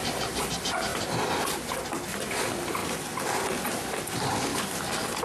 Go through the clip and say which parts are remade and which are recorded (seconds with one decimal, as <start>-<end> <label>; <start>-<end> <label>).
0.0-0.9 remade; 0.9-1.5 recorded; 1.5-2.8 remade; 2.8-3.7 recorded; 3.7-4.5 remade; 4.5-5.2 recorded